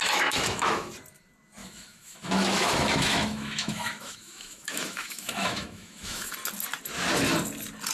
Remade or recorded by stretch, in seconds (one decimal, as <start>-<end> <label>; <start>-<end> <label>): 0.0-0.9 remade; 0.9-1.6 recorded; 1.6-6.3 remade; 6.3-7.9 recorded